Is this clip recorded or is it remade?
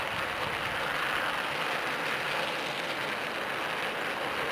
recorded